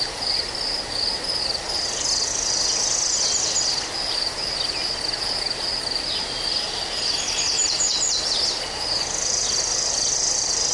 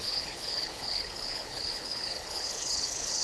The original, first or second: first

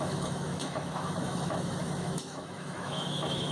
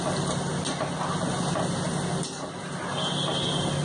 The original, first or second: second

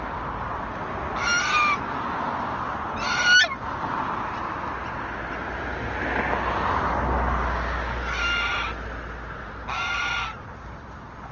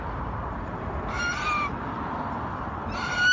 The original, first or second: first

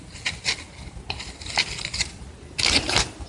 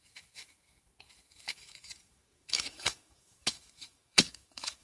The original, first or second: first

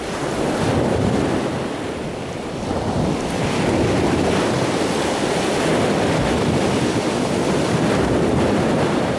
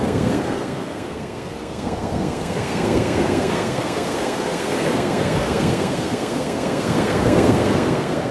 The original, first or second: first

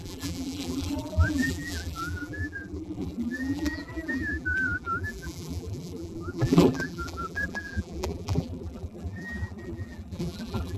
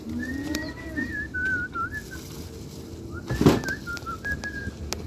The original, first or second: second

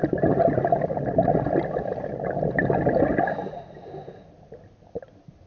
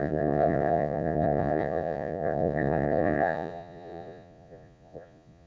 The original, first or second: first